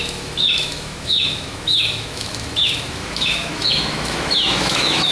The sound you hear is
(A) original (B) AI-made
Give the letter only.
B